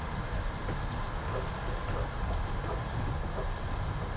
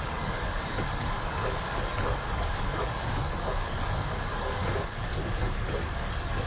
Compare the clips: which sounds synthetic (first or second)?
second